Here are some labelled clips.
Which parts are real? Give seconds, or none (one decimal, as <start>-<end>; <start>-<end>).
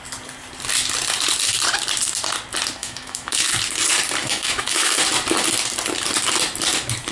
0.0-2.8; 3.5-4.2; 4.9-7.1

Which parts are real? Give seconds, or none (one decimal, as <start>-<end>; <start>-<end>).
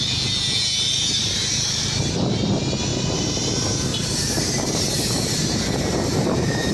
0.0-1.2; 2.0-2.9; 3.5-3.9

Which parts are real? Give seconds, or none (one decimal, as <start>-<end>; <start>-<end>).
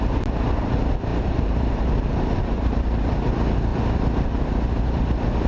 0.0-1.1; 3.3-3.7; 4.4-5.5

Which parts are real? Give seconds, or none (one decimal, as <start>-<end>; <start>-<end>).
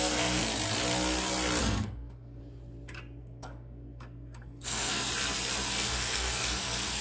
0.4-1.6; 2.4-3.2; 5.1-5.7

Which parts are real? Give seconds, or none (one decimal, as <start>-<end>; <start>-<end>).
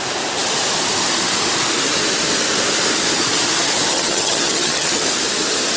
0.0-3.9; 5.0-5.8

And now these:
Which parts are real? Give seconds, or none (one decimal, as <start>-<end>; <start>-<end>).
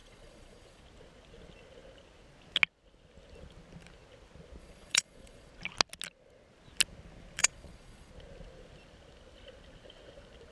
0.8-4.6; 5.5-7.4; 8.1-10.5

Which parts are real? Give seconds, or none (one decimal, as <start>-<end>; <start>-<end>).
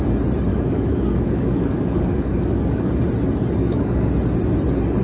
0.0-0.5; 2.9-3.6; 4.1-5.0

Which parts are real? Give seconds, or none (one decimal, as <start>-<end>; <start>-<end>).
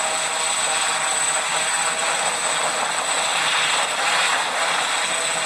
0.0-3.3; 4.9-5.5